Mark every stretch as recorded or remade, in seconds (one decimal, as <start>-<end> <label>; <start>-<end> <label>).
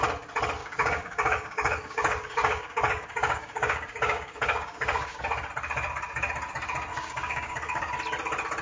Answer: 0.0-0.6 recorded; 0.6-5.2 remade; 5.2-6.9 recorded; 6.9-7.9 remade; 7.9-8.6 recorded